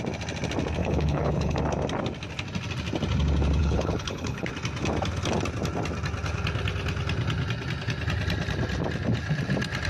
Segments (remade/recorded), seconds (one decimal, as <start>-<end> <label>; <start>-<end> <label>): 0.0-0.8 recorded; 0.8-1.6 remade; 1.6-3.6 recorded; 3.6-4.5 remade; 4.5-9.9 recorded